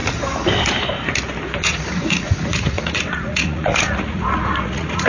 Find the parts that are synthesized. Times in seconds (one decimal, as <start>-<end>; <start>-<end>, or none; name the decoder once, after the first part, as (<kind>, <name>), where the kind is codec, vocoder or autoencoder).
1.6-5.1 (vocoder, Vocos)